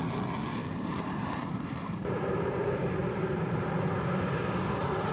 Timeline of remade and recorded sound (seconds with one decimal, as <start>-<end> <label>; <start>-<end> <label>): 0.0-0.6 recorded; 0.6-3.7 remade; 3.7-5.1 recorded